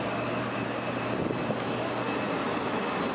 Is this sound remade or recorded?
recorded